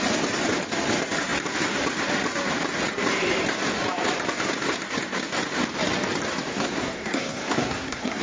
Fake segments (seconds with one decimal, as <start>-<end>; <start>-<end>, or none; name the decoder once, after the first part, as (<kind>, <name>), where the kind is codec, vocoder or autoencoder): 6.5-8.2 (codec, SNAC)